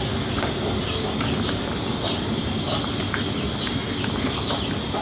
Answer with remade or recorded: recorded